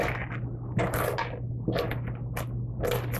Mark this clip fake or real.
real